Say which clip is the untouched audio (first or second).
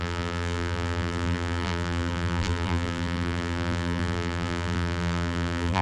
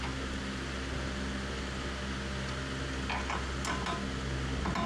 second